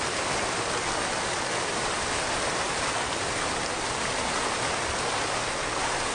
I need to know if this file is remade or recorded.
recorded